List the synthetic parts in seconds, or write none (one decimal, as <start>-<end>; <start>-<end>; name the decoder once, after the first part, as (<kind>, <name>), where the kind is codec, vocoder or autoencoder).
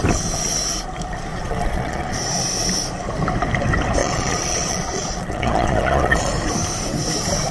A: 1.3-2.1 (vocoder, Vocos); 4.0-6.3